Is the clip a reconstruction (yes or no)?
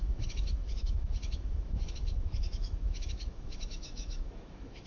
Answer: yes